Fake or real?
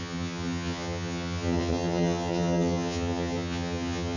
fake